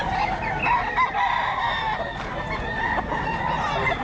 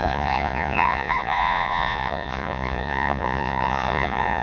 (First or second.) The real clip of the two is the first